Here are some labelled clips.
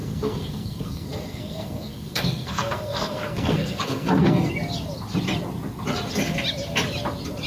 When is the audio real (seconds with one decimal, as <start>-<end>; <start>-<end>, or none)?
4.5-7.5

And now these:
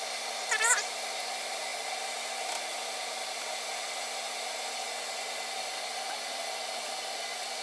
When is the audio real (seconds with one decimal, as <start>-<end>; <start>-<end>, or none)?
0.0-7.6

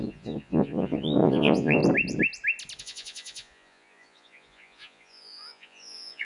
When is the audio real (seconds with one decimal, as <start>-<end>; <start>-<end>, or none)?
1.8-2.8

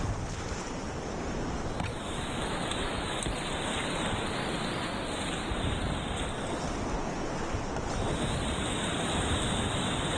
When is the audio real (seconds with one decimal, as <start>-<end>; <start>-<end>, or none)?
0.0-1.9; 3.2-10.2